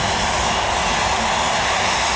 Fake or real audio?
real